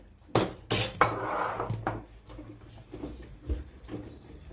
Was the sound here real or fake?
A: real